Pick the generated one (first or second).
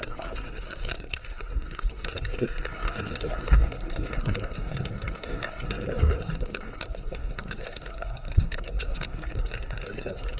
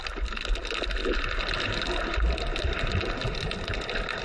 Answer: first